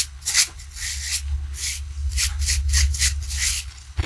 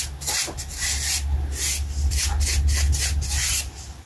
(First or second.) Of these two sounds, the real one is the second